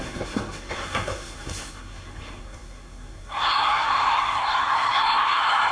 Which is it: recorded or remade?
remade